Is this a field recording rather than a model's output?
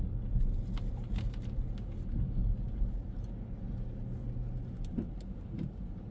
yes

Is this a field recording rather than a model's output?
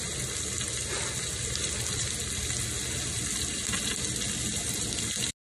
yes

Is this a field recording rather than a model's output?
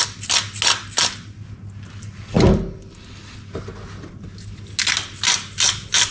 yes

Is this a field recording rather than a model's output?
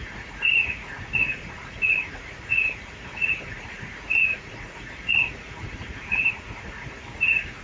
no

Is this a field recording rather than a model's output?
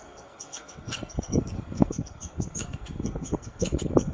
no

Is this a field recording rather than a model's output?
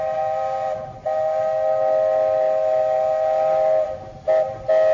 yes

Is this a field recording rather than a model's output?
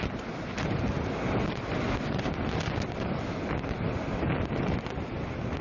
yes